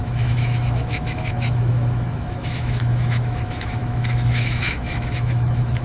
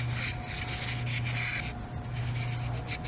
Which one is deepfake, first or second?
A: first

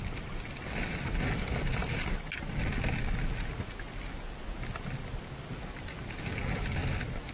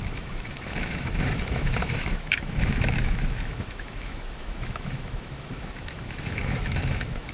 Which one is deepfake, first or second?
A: second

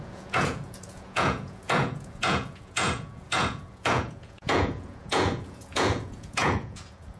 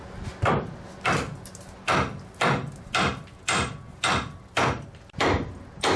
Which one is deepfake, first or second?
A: first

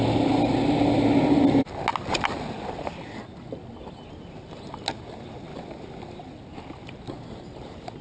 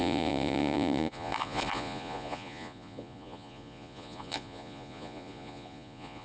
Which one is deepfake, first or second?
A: second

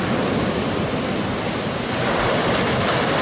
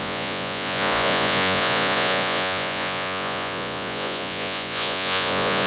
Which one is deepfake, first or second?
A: second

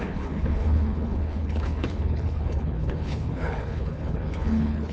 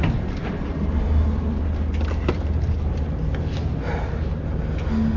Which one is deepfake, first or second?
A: first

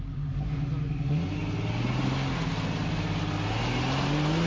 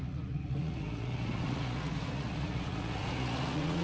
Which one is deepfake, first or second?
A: second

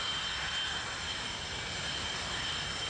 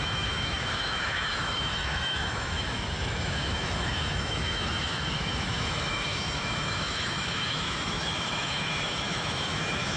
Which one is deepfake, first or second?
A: second